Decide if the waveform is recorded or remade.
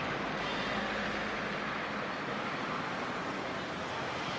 recorded